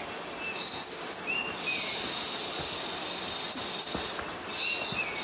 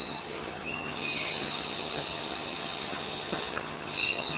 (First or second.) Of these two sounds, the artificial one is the second